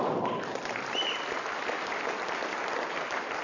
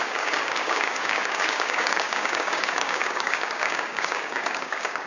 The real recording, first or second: first